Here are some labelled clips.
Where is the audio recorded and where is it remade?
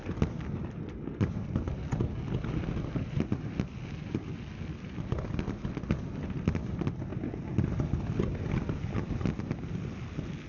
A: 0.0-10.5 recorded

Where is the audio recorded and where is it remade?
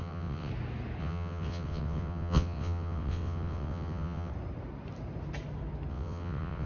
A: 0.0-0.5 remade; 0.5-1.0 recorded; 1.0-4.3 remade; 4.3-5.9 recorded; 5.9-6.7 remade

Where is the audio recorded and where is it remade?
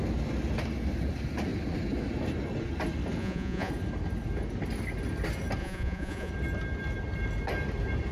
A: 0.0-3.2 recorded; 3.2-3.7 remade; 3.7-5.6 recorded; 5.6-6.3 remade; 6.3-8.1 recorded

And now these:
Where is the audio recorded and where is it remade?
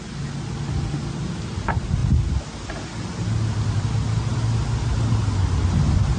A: 0.0-6.2 recorded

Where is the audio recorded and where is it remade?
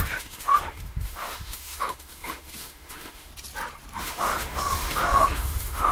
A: 0.0-3.3 remade; 3.3-4.0 recorded; 4.0-5.9 remade